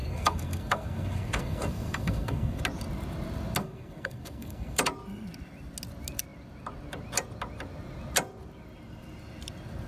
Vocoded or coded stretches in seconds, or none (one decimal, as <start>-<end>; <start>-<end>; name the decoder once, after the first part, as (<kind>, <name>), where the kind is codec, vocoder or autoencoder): 0.0-2.6 (codec, SNAC); 3.6-4.8